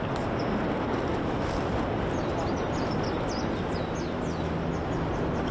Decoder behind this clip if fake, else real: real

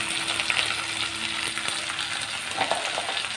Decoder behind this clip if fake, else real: real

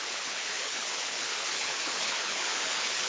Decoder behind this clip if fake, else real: fake, codec, HILCodec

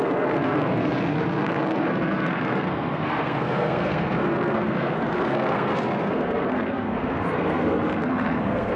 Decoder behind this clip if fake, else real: fake, codec, SNAC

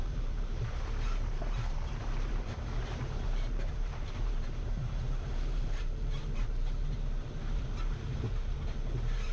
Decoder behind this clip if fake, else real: fake, vocoder, BigVGAN v2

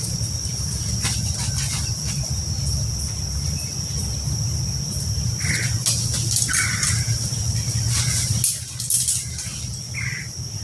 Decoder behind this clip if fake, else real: real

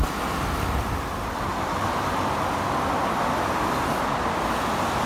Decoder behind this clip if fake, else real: real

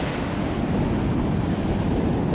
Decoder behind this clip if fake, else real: real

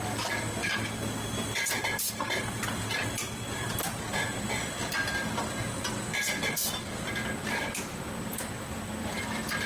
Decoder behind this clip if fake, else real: real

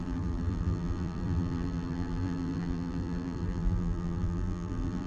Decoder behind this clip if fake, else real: fake, vocoder, BigVGAN v2